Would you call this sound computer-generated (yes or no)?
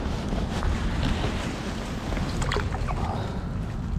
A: no